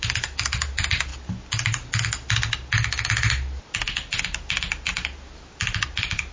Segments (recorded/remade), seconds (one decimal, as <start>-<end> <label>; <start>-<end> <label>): 0.0-1.1 remade; 1.1-4.9 recorded; 4.9-6.3 remade